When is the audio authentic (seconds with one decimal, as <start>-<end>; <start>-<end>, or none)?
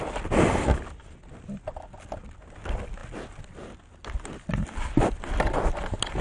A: 0.0-6.2